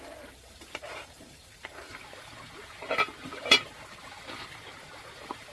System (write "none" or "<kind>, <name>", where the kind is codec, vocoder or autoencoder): vocoder, BigVGAN v2